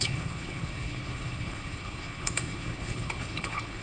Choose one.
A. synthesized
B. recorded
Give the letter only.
A